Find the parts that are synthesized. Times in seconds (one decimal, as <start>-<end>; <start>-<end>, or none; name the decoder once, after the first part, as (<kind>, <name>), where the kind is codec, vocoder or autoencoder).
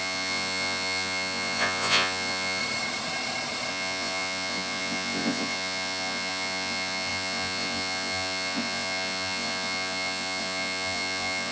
0.0-2.6 (vocoder, Vocos); 3.7-11.5